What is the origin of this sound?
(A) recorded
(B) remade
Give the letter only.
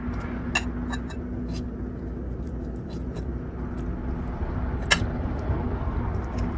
A